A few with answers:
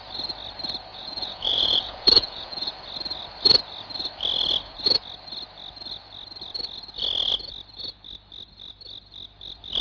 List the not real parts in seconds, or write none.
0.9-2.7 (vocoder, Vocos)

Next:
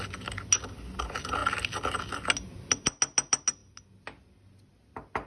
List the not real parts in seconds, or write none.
none

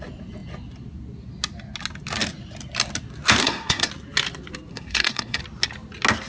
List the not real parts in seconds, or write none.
3.4-3.9 (codec, SNAC); 4.7-5.4